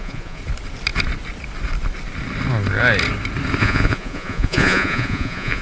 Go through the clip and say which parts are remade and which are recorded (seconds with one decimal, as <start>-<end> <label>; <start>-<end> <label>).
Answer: 0.0-0.4 remade; 0.4-3.6 recorded; 3.6-5.6 remade